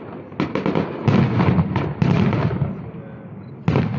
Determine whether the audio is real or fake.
real